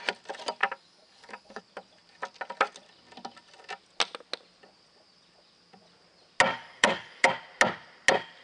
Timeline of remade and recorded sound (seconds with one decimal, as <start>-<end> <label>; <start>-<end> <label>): 0.0-0.6 recorded; 0.6-1.6 remade; 1.6-6.5 recorded; 6.5-7.3 remade; 7.3-8.4 recorded